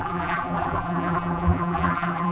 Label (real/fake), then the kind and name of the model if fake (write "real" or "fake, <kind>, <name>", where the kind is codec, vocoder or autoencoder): fake, vocoder, BigVGAN v2